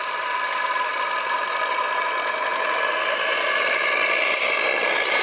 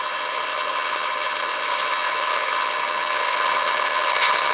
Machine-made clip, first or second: second